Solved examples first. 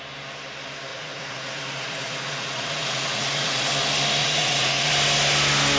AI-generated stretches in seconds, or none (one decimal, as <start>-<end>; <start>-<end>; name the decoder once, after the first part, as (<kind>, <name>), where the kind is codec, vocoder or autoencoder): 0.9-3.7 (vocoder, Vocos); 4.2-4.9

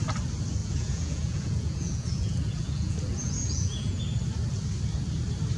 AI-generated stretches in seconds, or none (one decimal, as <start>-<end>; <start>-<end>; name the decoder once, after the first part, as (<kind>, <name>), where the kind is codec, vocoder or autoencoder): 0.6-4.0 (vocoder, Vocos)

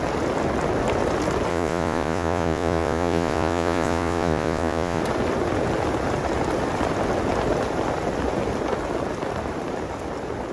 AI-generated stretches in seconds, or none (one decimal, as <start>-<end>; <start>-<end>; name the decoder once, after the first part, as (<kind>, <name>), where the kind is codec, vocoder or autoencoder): 1.5-5.0 (vocoder, Vocos)

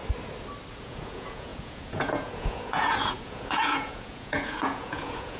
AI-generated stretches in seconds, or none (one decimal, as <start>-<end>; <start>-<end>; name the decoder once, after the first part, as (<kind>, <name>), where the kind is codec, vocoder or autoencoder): 0.8-5.4 (vocoder, Vocos)